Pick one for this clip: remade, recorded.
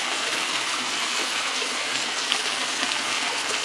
remade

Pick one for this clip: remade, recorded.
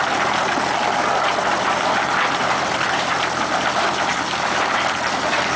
recorded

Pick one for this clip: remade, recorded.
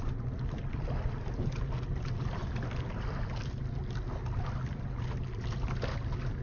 recorded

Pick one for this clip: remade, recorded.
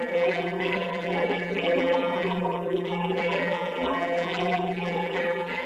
remade